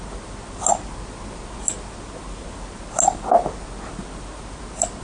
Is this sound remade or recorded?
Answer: recorded